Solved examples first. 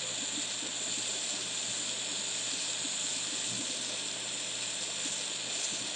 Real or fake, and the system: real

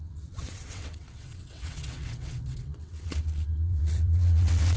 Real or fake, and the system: fake, vocoder, WaveNeXt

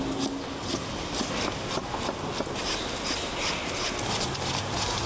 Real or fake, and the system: real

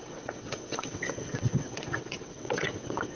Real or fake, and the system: fake, vocoder, WaveNeXt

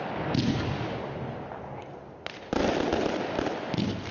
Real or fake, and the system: real